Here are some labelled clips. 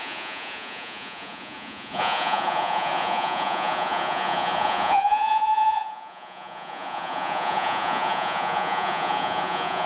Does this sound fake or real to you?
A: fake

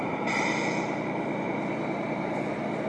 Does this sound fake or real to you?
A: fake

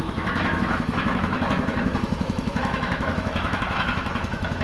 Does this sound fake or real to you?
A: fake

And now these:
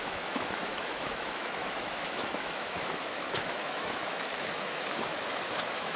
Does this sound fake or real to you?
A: fake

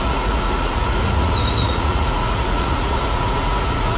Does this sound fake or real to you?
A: fake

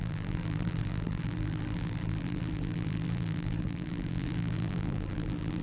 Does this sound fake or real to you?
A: fake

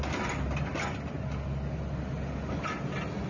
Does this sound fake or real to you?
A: real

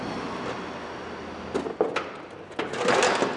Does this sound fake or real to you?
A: real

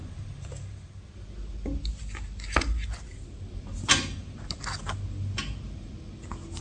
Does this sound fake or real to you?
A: real